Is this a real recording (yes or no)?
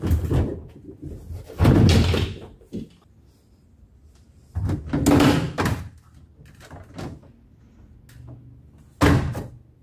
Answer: yes